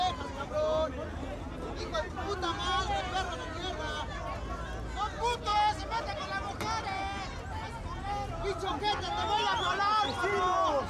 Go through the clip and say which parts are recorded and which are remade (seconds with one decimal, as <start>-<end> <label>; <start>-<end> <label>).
0.0-10.9 recorded